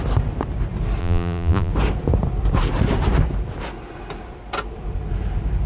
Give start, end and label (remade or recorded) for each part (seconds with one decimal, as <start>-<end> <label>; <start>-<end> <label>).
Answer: 0.0-1.0 recorded; 1.0-1.7 remade; 1.7-5.7 recorded